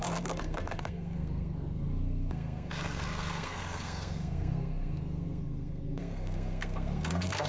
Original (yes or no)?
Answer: no